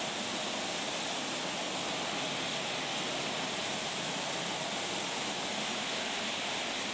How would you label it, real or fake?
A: real